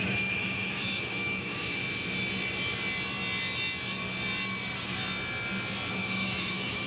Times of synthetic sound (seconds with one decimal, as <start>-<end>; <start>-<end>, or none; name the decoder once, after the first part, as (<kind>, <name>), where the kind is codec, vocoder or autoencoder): 0.0-1.8 (autoencoder, DAC-VAE); 5.9-6.9

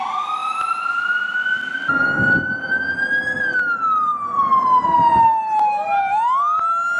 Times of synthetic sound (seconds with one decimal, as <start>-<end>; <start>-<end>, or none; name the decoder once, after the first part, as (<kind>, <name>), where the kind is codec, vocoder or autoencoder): none

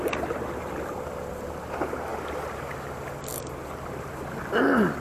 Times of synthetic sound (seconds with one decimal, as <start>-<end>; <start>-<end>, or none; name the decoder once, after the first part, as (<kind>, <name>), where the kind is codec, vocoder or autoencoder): none

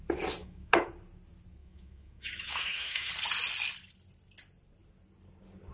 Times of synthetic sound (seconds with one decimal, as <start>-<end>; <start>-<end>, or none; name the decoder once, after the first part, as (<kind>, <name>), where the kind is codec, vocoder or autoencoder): 0.4-0.9 (autoencoder, DAC-VAE); 1.6-3.1